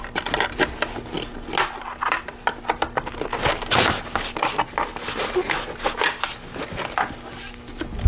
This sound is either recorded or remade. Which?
recorded